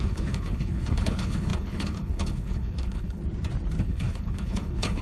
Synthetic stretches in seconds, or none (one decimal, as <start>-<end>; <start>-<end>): 0.0-3.2; 3.8-5.0